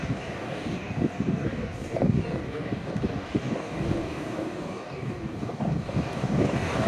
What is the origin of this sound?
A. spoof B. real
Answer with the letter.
A